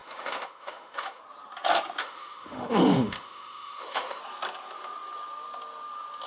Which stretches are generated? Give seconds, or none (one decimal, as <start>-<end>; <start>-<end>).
0.0-1.2; 2.0-4.2